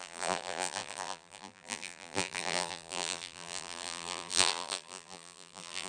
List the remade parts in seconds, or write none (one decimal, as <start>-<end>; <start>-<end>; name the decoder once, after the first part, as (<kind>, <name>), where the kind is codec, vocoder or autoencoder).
0.0-5.9 (vocoder, BigVGAN v2)